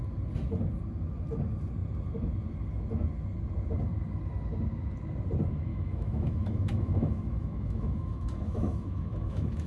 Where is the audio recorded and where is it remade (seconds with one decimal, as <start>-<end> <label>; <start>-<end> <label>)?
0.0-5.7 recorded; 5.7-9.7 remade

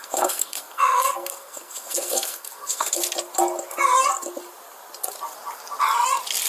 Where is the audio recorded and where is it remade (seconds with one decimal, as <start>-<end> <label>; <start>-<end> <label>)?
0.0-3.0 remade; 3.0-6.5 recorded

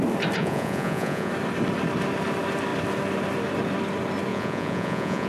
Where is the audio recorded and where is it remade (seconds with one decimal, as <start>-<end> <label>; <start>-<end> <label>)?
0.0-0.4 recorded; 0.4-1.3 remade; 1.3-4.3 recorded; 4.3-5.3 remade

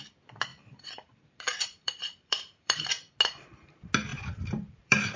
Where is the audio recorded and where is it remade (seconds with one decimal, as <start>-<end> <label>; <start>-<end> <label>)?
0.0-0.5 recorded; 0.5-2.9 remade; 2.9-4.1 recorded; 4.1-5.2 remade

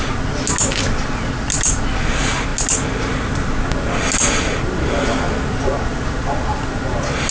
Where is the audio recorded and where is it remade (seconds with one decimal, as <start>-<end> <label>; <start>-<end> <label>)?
0.0-7.3 recorded

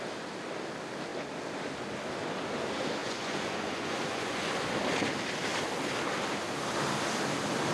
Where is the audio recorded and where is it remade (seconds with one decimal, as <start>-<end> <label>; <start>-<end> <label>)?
0.0-3.0 recorded; 3.0-4.5 remade; 4.5-7.7 recorded